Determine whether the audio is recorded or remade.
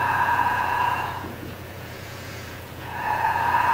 remade